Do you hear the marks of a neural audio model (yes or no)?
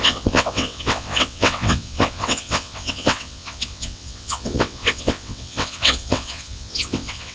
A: yes